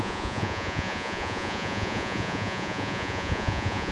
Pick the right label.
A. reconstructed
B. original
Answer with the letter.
A